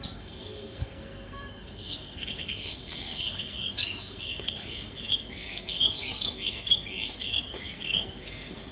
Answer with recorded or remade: remade